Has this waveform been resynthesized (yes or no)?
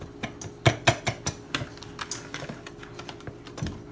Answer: no